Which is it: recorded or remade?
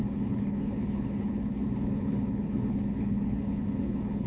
remade